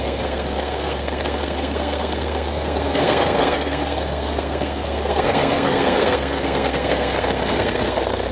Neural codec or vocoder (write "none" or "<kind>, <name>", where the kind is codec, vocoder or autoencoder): codec, SNAC